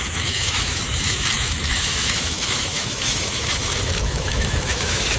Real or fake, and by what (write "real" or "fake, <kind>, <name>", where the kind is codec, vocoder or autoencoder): fake, autoencoder, DAC-VAE